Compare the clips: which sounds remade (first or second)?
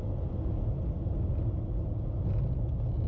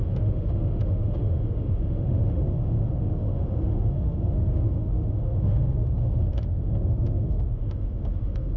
second